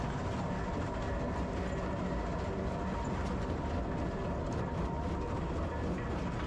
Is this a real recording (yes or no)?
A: yes